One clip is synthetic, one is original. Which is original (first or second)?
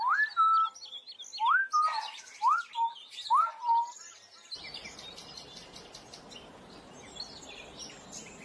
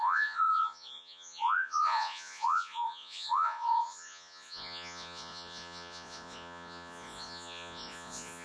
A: first